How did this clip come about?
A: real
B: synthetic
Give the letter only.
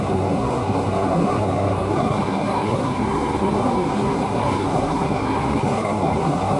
B